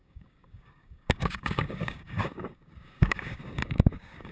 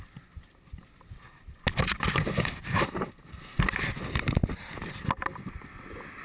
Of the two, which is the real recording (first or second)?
second